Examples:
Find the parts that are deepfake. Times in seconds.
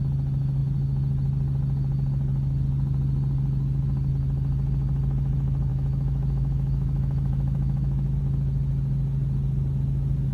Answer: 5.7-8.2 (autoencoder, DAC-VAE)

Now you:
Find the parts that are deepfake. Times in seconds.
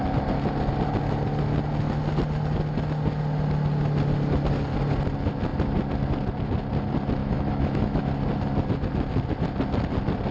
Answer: 7.2-8.1 (autoencoder, DAC-VAE)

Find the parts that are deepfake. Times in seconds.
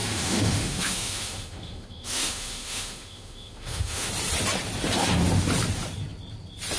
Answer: 0.0-4.1 (autoencoder, DAC-VAE)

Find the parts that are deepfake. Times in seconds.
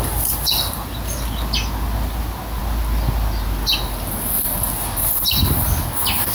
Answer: none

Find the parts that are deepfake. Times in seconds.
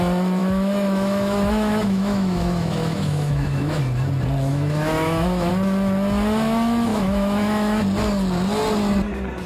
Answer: 0.4-3.8 (autoencoder, DAC-VAE); 4.5-5.5; 6.9-7.8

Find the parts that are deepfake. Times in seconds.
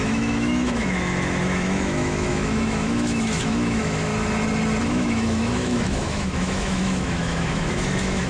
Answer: 0.0-4.1 (autoencoder, DAC-VAE); 4.8-8.3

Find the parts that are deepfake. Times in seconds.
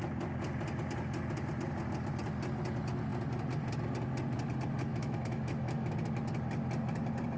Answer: 4.9-5.9 (autoencoder, DAC-VAE)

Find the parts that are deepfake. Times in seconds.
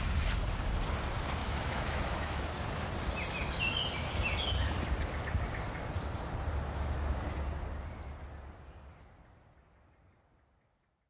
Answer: 1.4-2.5 (autoencoder, DAC-VAE)